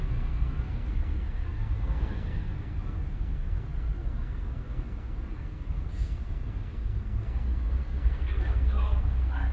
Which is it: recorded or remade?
remade